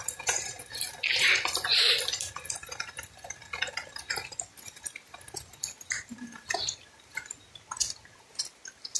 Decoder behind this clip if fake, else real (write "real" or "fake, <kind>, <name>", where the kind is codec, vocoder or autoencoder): real